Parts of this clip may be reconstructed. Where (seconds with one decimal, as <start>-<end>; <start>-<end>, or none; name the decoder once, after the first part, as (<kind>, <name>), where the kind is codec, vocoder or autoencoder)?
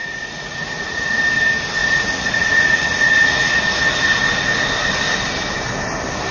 0.0-1.2 (vocoder, Vocos); 1.8-3.6